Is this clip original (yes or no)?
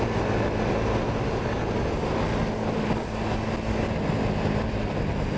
yes